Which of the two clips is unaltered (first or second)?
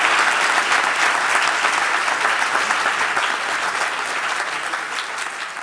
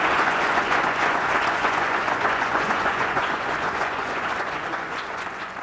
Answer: first